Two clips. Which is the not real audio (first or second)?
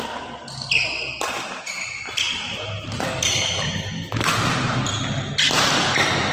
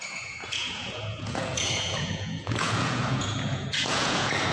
second